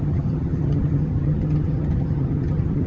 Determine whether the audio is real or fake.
fake